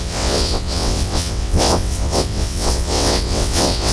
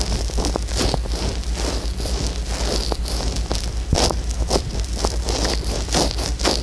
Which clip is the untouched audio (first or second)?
second